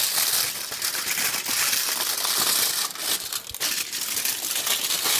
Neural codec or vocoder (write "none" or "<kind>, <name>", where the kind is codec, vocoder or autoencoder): none